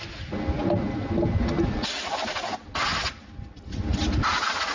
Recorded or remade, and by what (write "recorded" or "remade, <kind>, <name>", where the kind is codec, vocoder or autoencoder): recorded